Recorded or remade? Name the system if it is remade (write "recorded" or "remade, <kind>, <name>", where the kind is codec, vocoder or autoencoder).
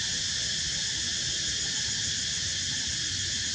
recorded